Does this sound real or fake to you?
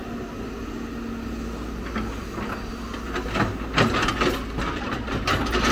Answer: real